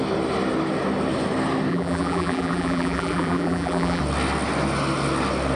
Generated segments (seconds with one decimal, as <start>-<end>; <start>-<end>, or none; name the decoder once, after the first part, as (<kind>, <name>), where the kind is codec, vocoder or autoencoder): 1.7-4.0 (vocoder, BigVGAN v2)